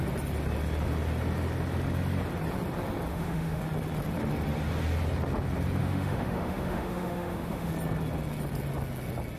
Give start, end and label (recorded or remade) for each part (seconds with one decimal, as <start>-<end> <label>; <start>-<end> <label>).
0.0-3.1 recorded; 3.1-3.6 remade; 3.6-5.8 recorded; 5.8-7.7 remade; 7.7-9.4 recorded